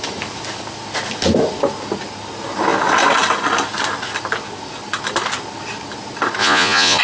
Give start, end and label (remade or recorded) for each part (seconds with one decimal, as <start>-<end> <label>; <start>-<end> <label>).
0.0-6.4 recorded; 6.4-7.0 remade

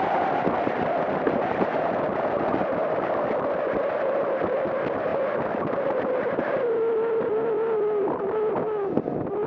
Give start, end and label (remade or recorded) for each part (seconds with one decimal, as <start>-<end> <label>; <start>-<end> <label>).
0.0-9.5 recorded

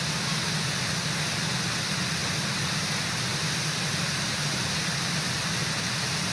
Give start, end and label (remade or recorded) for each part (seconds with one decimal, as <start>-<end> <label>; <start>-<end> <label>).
0.0-6.3 recorded

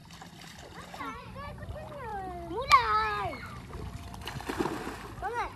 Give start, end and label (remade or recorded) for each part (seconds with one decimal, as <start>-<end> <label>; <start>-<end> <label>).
0.0-5.6 recorded

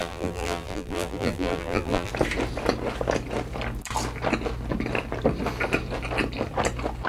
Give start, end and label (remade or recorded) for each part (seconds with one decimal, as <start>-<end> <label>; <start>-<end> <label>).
0.0-2.1 remade; 2.1-7.1 recorded

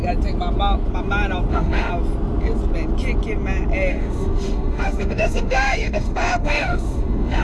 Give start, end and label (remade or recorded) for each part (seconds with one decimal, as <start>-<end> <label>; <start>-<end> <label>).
0.0-1.5 recorded; 1.5-1.9 remade; 1.9-3.9 recorded; 3.9-7.4 remade

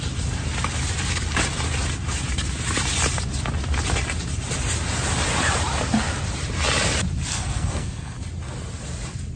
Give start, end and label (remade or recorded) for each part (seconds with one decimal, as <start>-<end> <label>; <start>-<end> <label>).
0.0-7.3 recorded; 7.3-8.2 remade; 8.2-9.4 recorded

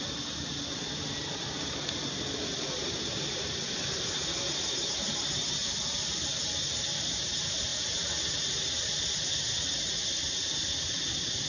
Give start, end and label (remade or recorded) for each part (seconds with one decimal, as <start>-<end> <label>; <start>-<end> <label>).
0.0-11.5 recorded